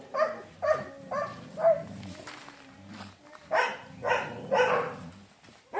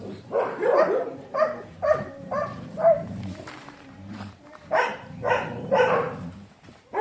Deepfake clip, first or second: second